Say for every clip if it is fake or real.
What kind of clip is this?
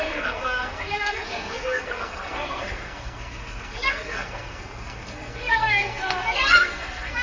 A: fake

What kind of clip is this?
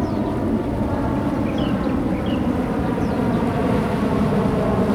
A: real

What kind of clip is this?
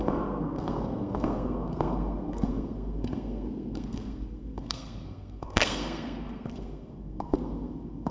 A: fake